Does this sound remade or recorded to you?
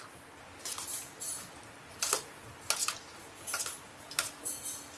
recorded